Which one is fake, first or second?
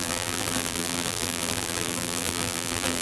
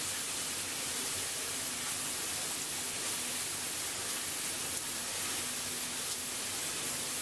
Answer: first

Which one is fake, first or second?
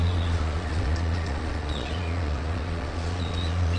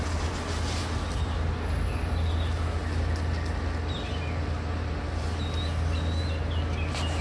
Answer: first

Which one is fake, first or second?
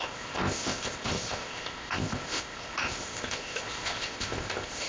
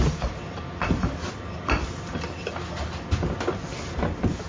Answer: first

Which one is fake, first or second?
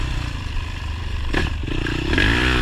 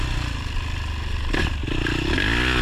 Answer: first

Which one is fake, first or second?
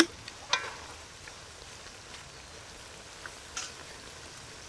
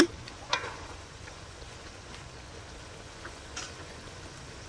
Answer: second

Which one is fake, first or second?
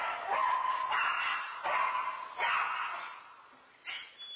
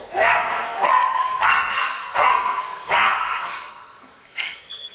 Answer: second